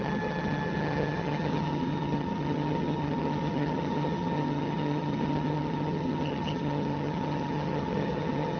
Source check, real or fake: fake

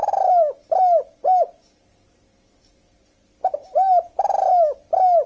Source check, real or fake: real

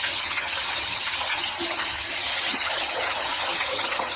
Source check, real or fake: fake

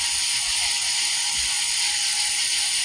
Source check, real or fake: fake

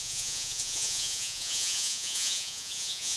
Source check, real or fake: fake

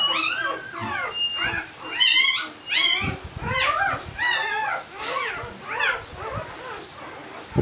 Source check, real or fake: real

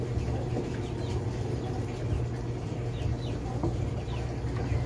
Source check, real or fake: real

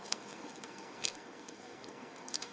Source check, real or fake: fake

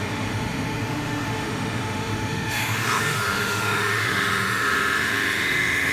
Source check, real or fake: fake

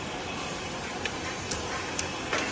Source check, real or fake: real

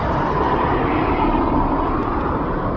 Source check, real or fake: real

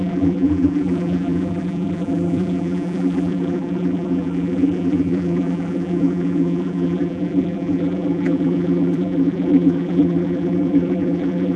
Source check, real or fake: fake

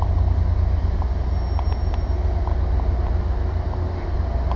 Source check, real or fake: real